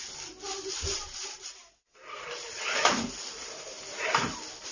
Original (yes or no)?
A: yes